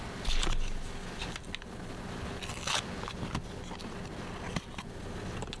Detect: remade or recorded recorded